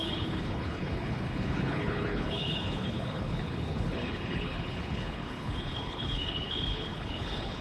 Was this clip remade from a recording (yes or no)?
yes